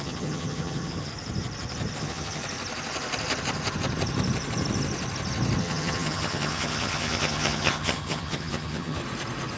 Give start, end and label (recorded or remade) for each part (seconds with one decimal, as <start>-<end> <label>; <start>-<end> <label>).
0.0-1.1 remade; 1.1-2.0 recorded; 2.0-2.4 remade; 2.4-5.6 recorded; 5.6-9.0 remade; 9.0-9.6 recorded